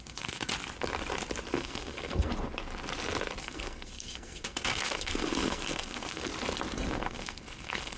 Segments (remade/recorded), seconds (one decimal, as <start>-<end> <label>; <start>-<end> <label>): 0.0-0.5 remade; 0.5-1.5 recorded; 1.5-2.3 remade; 2.3-3.4 recorded; 3.4-6.3 remade; 6.3-6.9 recorded; 6.9-8.0 remade